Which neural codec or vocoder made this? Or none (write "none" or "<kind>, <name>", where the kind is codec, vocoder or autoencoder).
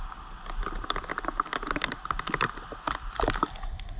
none